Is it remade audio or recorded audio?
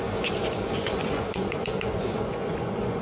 remade